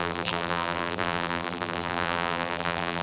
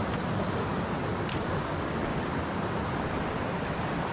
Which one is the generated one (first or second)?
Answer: first